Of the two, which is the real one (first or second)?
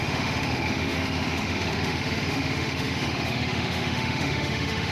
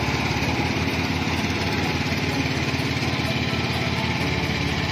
second